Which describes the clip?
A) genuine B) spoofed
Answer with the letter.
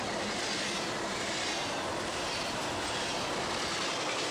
A